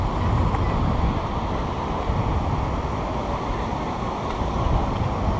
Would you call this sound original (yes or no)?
yes